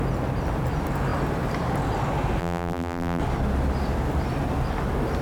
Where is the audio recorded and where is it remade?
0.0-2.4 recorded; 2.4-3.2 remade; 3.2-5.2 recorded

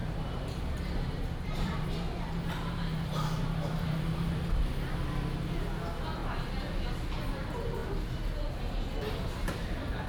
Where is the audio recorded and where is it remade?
0.0-4.4 remade; 4.4-7.8 recorded; 7.8-8.6 remade; 8.6-9.4 recorded; 9.4-10.1 remade

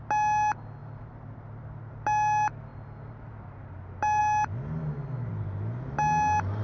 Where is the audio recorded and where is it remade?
0.0-0.8 recorded; 0.8-1.9 remade; 1.9-2.7 recorded; 2.7-3.2 remade; 3.2-6.6 recorded

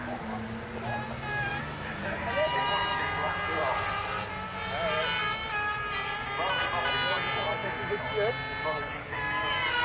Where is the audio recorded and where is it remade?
0.0-1.5 recorded; 1.5-3.0 remade; 3.0-5.4 recorded; 5.4-6.9 remade; 6.9-9.8 recorded

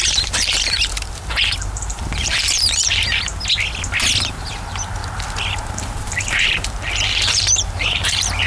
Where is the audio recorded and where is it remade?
0.0-3.3 remade; 3.3-4.2 recorded; 4.2-5.0 remade; 5.0-5.5 recorded; 5.5-8.5 remade

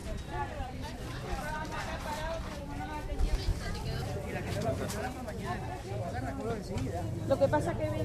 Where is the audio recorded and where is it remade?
0.0-2.6 remade; 2.6-3.5 recorded; 3.5-6.0 remade; 6.0-8.0 recorded

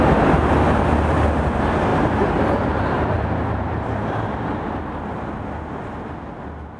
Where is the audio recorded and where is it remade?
0.0-1.9 recorded; 1.9-4.8 remade; 4.8-6.8 recorded